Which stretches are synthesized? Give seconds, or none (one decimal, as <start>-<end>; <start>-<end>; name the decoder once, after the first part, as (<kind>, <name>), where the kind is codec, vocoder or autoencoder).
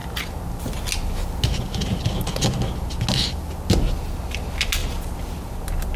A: none